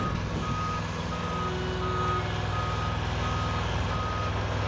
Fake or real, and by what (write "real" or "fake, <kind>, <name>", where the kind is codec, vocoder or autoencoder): real